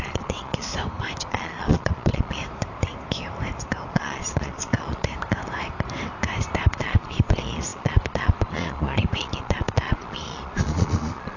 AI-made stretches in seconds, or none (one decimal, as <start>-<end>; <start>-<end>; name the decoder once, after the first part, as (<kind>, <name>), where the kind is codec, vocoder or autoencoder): 0.0-0.7 (vocoder, Vocos); 1.3-2.4; 3.9-5.1; 6.7-11.4